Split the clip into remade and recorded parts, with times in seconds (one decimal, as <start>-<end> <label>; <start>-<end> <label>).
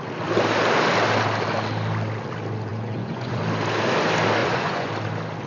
0.0-2.7 recorded; 2.7-3.4 remade; 3.4-4.4 recorded; 4.4-4.9 remade; 4.9-5.5 recorded